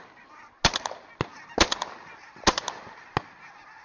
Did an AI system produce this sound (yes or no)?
no